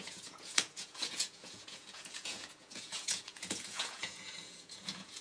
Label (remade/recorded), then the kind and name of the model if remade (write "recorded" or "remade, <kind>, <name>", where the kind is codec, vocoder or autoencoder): remade, vocoder, Vocos